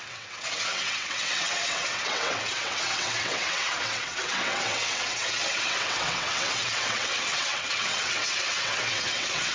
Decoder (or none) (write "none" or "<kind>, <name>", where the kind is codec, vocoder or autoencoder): vocoder, WaveNeXt